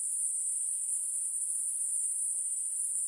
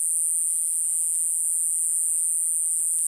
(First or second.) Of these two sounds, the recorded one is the second